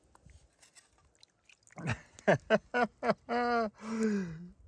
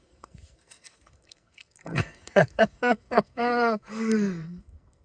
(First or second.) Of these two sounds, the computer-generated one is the second